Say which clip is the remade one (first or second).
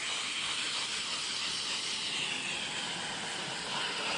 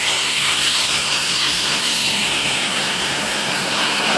second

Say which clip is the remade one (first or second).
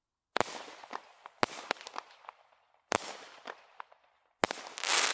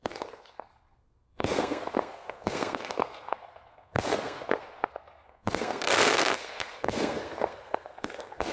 second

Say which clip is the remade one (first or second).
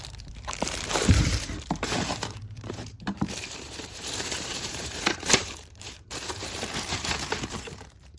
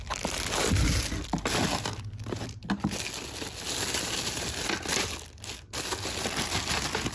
first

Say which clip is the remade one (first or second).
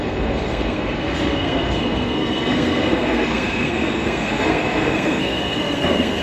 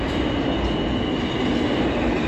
first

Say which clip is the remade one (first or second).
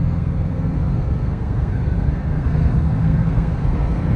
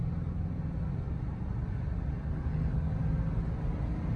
first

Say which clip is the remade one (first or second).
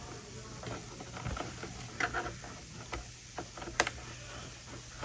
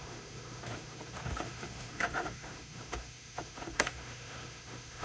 second